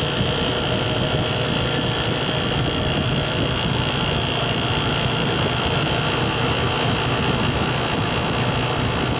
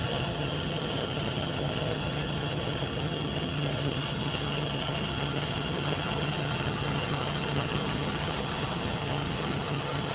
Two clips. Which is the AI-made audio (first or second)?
second